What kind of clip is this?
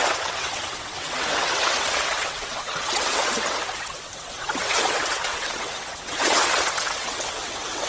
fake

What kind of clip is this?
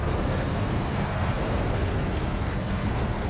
fake